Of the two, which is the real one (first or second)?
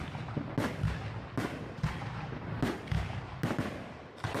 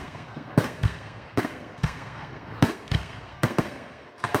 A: first